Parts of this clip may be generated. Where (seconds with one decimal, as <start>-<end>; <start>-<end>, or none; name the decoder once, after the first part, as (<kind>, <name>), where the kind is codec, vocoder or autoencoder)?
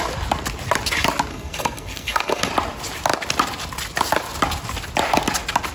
1.3-2.5 (codec, SNAC)